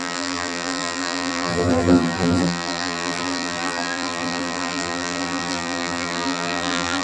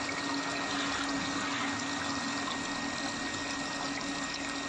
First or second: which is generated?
first